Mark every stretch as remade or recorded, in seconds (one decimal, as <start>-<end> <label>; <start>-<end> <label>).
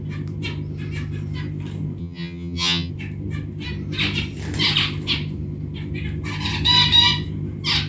0.0-2.0 recorded; 2.0-2.9 remade; 2.9-7.9 recorded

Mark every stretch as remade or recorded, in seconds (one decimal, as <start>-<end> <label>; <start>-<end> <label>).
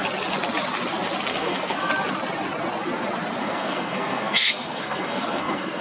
0.0-1.3 recorded; 1.3-1.9 remade; 1.9-3.4 recorded; 3.4-5.8 remade